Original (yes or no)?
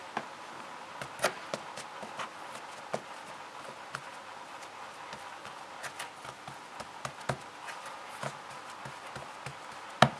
yes